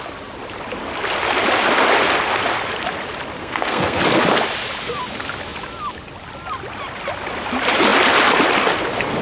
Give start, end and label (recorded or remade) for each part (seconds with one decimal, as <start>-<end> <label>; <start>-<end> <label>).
0.0-3.4 recorded; 3.4-4.0 remade; 4.0-9.2 recorded